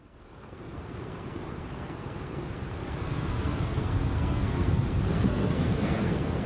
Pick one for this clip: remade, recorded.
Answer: remade